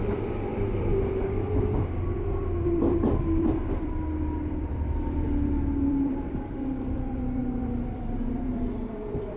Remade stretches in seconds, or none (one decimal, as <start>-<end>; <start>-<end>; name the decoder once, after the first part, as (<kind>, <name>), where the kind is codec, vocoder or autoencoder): 0.0-9.4 (vocoder, BigVGAN v2)